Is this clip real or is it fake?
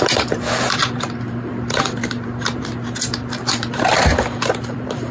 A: fake